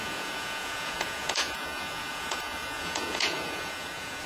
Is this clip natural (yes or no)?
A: no